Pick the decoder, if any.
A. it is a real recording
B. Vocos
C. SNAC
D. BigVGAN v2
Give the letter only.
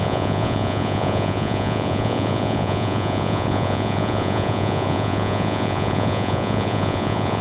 B